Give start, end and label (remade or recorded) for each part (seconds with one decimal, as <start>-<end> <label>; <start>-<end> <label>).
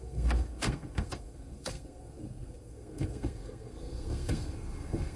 0.0-5.2 remade